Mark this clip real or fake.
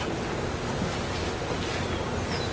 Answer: real